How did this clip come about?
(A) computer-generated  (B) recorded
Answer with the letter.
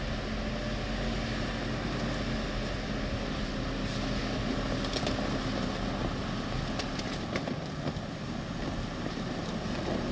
B